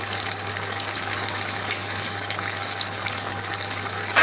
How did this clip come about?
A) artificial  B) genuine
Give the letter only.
A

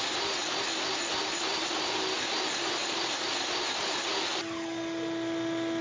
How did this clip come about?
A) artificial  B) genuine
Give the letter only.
B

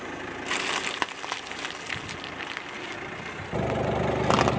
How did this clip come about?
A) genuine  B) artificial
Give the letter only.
A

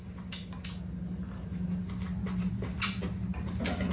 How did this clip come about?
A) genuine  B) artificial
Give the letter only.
A